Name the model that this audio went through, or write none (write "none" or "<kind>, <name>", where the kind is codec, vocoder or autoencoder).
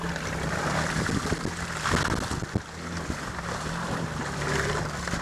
none